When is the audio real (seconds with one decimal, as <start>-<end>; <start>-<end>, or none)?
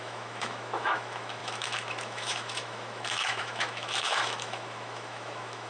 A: none